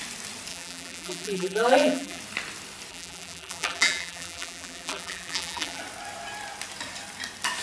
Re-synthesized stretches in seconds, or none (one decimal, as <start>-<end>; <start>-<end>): 0.5-2.2; 2.9-5.8